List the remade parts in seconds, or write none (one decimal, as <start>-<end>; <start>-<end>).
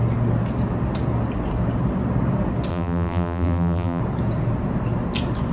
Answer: 2.7-4.0